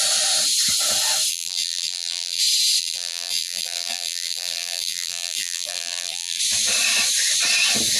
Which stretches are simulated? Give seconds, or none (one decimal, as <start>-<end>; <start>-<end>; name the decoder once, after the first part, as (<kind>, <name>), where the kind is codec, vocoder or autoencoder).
1.3-2.4 (vocoder, BigVGAN v2); 2.8-6.4